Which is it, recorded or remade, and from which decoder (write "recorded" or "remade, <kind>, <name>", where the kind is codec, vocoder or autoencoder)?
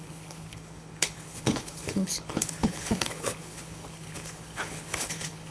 remade, codec, HILCodec